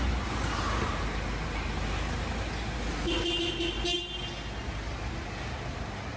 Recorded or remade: recorded